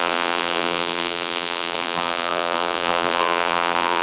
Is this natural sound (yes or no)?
no